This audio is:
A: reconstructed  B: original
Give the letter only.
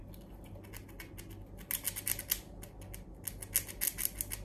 B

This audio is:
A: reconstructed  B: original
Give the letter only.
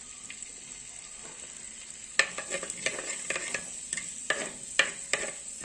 B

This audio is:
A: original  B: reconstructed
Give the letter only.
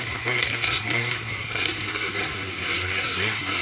B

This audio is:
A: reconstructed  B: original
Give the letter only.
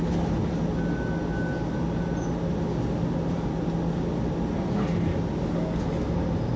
B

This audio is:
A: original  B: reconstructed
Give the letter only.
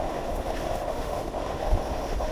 B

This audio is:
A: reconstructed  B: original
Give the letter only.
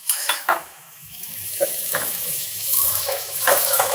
A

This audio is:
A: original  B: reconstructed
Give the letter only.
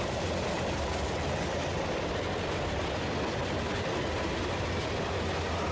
A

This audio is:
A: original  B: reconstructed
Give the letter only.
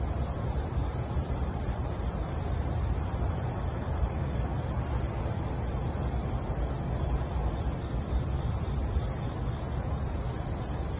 B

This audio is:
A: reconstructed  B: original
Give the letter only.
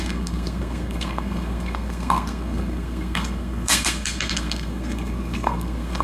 A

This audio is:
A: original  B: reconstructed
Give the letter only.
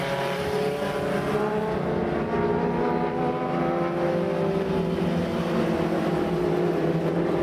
A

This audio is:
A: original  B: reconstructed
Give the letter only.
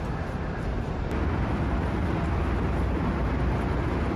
A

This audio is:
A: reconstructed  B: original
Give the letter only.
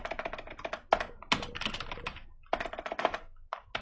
B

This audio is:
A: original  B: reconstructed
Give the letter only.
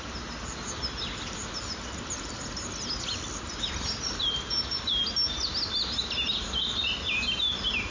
A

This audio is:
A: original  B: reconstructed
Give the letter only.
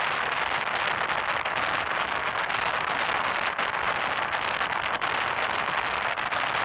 A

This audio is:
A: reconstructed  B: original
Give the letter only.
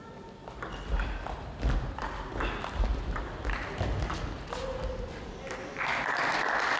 B